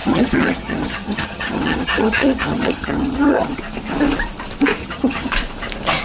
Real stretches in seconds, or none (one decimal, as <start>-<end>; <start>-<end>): 3.6-4.8; 5.3-6.0